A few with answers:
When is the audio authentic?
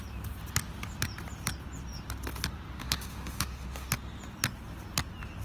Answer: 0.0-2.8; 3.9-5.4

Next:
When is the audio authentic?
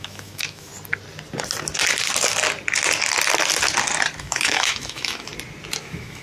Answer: 0.7-4.2; 5.3-5.8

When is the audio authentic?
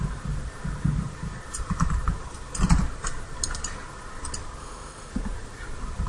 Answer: 0.0-4.6; 5.1-6.1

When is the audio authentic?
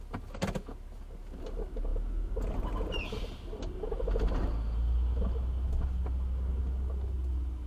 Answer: 0.0-7.7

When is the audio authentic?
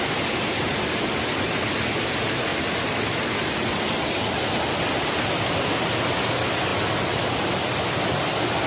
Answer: 0.0-8.7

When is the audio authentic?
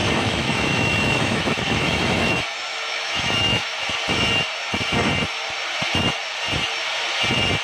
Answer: 2.3-2.7; 3.8-7.6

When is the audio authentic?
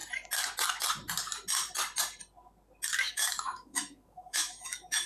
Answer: 0.0-3.1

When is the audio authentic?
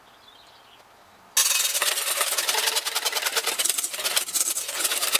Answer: 0.0-5.2